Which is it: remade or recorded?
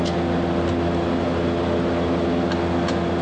recorded